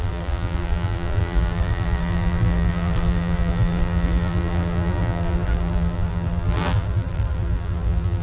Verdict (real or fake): fake